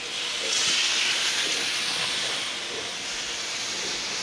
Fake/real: real